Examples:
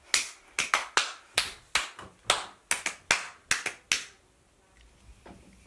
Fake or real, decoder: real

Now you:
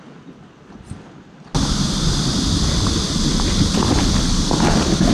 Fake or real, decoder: real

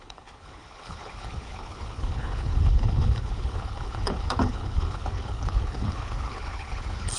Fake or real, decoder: fake, codec, HILCodec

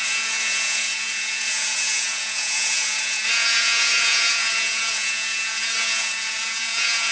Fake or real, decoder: fake, vocoder, Vocos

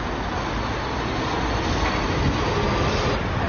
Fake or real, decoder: real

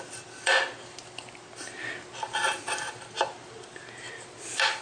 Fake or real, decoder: real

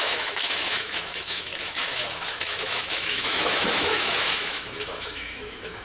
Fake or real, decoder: fake, autoencoder, DAC-VAE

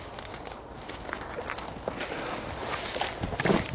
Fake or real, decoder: real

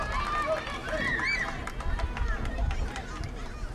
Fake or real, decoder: real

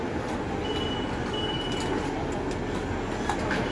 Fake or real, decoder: real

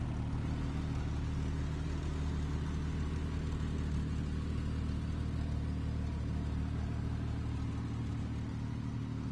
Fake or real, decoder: real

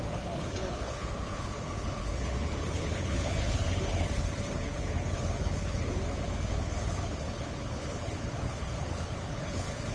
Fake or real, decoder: fake, codec, HILCodec